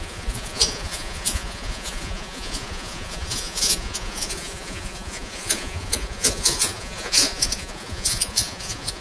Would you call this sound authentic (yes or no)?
no